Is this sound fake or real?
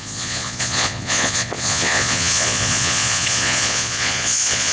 fake